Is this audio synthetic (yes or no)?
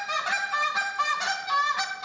no